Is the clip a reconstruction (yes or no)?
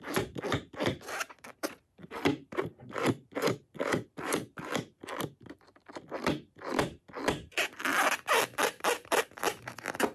yes